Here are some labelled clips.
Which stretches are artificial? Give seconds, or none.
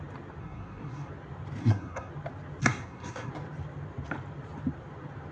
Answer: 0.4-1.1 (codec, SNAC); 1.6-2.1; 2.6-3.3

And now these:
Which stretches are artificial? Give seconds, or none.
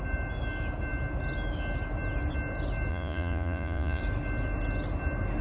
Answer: 2.9-4.0 (vocoder, Vocos)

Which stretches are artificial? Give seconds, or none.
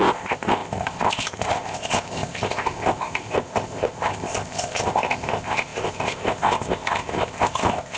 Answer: 0.0-8.0 (codec, ZipCodec)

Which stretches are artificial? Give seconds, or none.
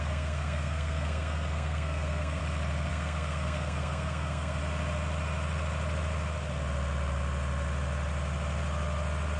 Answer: 0.0-2.4 (codec, SNAC); 2.9-4.6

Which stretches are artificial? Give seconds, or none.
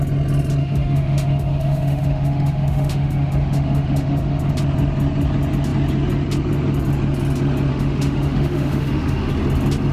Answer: 0.6-4.5 (autoencoder, DAC-VAE); 7.7-9.3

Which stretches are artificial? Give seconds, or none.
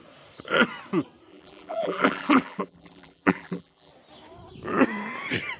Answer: 1.3-3.9 (vocoder, BigVGAN v2)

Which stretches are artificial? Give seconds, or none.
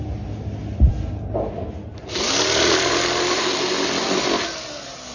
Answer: none